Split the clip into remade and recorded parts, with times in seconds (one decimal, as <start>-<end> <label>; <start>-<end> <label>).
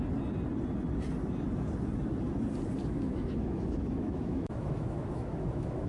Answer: 0.0-2.9 recorded; 2.9-5.9 remade